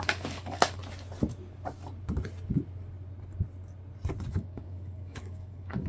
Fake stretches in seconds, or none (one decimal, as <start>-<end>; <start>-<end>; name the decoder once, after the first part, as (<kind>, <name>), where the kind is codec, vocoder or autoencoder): 0.0-0.8 (codec, DAC); 4.3-5.9